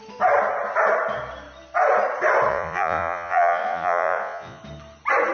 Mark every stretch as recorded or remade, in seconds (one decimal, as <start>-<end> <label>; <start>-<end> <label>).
0.0-2.5 recorded; 2.5-4.6 remade; 4.6-5.3 recorded

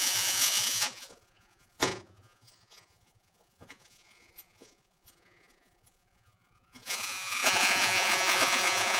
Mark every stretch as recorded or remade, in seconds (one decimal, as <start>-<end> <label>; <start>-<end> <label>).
0.0-9.0 remade

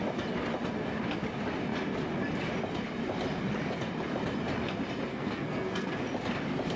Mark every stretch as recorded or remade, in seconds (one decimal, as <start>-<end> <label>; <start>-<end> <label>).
0.0-5.1 recorded; 5.1-6.0 remade; 6.0-6.8 recorded

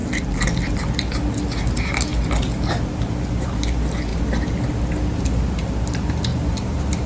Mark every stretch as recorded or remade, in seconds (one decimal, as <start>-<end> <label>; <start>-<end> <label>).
0.0-6.3 recorded; 6.3-7.1 remade

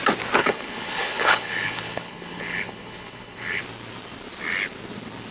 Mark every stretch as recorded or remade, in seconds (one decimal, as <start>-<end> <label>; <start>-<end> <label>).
0.0-0.4 recorded; 0.4-3.6 remade; 3.6-5.3 recorded

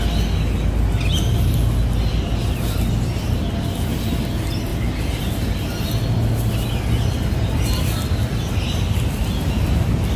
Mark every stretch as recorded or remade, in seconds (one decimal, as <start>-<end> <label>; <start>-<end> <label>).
0.0-10.2 recorded

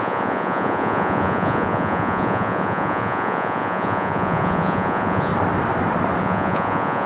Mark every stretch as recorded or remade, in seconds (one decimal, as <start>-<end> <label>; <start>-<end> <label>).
0.0-5.3 remade; 5.3-6.2 recorded; 6.2-7.1 remade